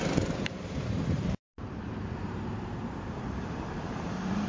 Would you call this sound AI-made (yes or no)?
yes